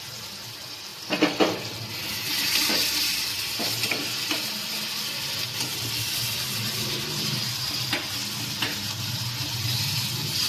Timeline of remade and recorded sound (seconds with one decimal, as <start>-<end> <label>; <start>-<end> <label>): 0.0-10.5 recorded